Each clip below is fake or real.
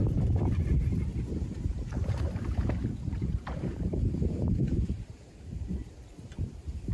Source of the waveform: fake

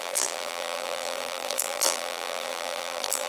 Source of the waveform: fake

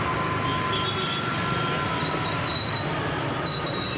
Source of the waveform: real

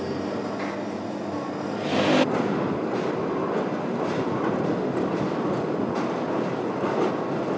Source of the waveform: real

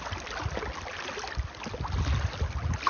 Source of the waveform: real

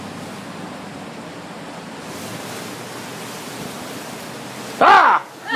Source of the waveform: real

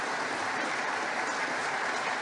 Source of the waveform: fake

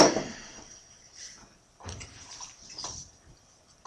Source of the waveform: fake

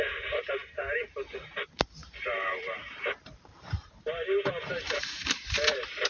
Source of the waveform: fake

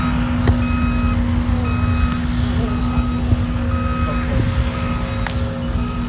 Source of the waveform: real